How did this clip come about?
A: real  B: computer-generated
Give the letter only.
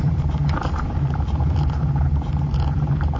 B